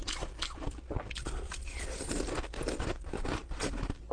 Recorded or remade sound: recorded